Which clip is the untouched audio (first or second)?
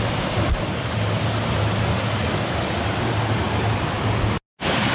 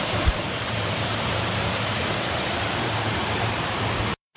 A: first